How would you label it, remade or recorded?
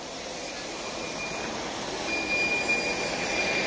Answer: recorded